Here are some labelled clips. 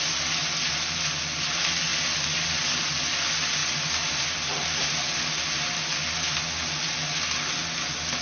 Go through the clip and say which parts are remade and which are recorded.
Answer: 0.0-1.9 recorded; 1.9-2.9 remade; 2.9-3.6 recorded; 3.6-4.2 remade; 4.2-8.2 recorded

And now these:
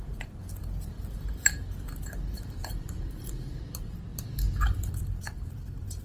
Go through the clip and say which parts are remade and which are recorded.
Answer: 0.0-6.0 remade

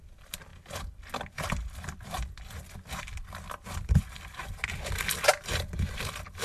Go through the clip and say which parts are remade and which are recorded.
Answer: 0.0-0.5 remade; 0.5-1.2 recorded; 1.2-6.4 remade